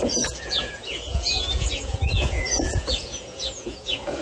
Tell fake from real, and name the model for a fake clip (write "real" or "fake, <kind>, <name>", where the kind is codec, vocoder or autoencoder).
fake, vocoder, Vocos